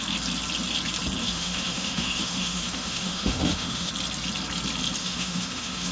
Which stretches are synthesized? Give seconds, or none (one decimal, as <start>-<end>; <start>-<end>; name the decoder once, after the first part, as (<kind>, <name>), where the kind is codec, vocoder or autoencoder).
1.2-3.9 (autoencoder, DAC-VAE); 5.0-5.9